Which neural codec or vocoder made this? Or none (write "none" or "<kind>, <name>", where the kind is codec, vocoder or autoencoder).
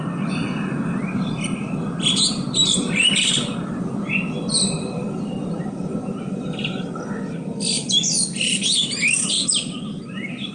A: none